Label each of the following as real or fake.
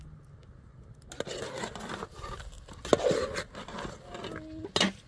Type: real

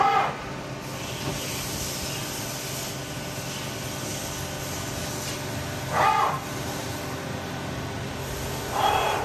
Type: real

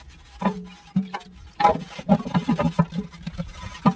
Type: real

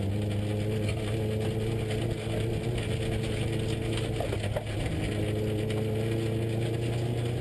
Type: real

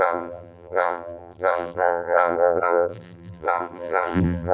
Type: fake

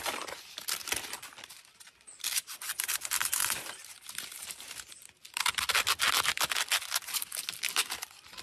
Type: real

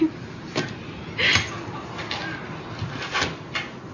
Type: real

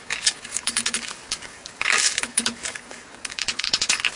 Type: fake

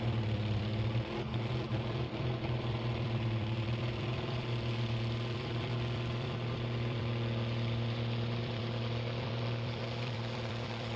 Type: fake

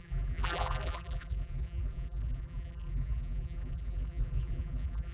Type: fake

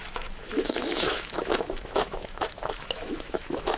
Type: fake